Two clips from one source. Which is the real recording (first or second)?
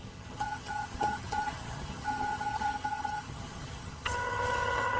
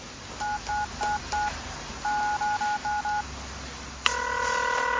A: second